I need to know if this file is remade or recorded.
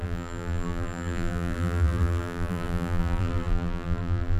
remade